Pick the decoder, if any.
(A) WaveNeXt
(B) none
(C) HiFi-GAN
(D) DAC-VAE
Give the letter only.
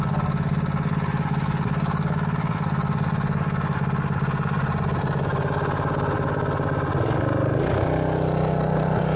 B